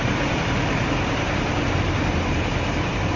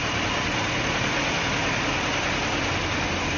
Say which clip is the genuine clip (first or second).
second